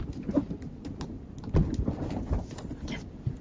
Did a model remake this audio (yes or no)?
no